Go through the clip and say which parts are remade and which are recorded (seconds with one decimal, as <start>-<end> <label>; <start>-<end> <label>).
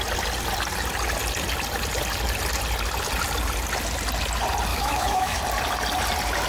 0.0-4.7 recorded; 4.7-5.4 remade; 5.4-6.5 recorded